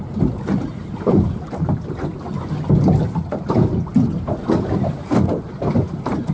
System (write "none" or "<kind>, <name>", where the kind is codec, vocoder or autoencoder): none